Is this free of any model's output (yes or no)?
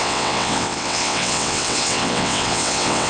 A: no